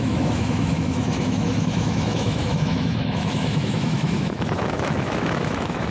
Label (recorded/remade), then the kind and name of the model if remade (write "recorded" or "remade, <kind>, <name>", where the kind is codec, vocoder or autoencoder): remade, autoencoder, DAC-VAE